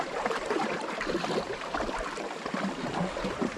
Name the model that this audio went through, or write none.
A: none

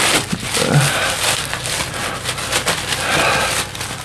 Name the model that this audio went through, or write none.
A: none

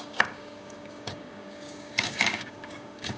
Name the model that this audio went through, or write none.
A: codec, DAC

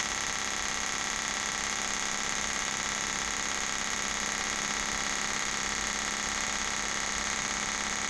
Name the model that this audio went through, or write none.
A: none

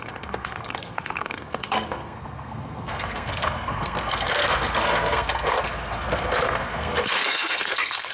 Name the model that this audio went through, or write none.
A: codec, SNAC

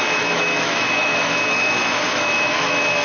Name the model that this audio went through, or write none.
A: autoencoder, DAC-VAE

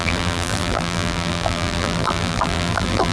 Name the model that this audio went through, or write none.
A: vocoder, BigVGAN v2